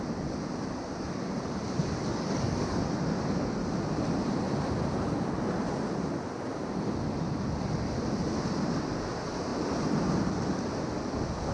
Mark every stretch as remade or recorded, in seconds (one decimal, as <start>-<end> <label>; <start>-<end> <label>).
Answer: 0.0-2.1 recorded; 2.1-2.8 remade; 2.8-11.5 recorded